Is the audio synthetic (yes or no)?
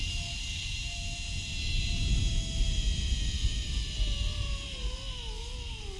no